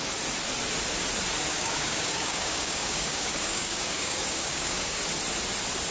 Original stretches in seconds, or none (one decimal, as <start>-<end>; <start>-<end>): 0.0-1.5; 5.0-5.9